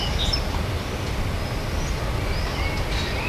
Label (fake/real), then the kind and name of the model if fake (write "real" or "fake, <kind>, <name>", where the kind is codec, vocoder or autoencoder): real